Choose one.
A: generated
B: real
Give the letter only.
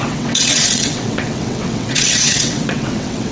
A